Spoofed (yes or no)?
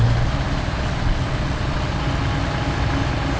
no